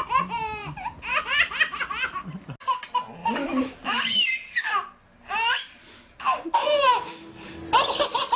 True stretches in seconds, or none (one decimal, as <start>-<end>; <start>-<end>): 0.0-3.4; 4.3-5.8; 7.3-8.4